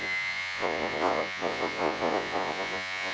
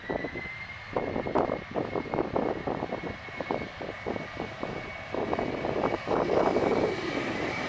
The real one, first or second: second